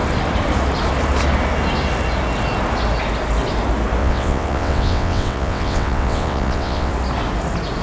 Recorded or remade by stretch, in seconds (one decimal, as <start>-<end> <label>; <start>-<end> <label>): 0.0-4.0 recorded; 4.0-6.9 remade; 6.9-7.8 recorded